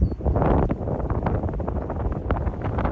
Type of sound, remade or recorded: recorded